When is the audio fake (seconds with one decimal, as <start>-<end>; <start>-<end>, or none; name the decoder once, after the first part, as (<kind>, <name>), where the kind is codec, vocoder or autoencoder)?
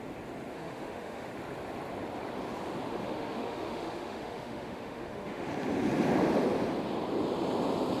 0.5-1.3 (autoencoder, DAC-VAE); 2.9-5.5